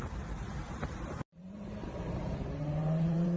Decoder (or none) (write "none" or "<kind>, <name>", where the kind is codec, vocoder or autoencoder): vocoder, BigVGAN v2